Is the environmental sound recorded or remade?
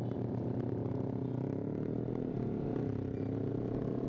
recorded